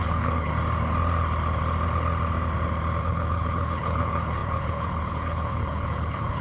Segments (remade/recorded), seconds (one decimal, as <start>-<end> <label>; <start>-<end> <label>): 0.0-0.5 remade; 0.5-3.0 recorded; 3.0-6.4 remade